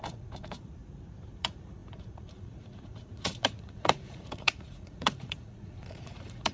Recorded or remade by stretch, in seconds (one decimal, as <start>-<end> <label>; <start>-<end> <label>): 0.0-0.8 remade; 0.8-1.3 recorded; 1.3-6.5 remade